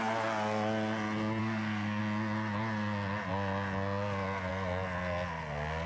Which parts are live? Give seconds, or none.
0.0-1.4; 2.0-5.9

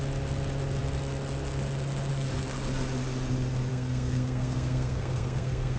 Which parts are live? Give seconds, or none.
0.0-3.7

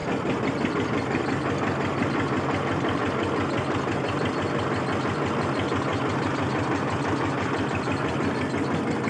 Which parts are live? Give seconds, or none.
0.0-9.1

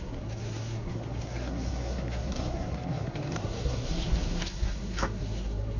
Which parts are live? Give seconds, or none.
none

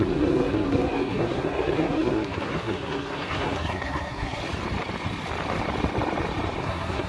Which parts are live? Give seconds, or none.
4.4-6.6

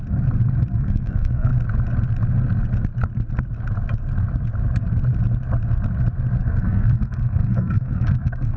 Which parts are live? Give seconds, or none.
0.0-0.7; 1.5-6.4